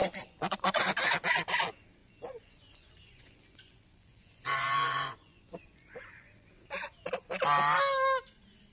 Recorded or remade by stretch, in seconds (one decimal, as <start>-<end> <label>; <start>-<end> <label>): 0.0-0.8 remade; 0.8-2.0 recorded; 2.0-6.5 remade; 6.5-8.7 recorded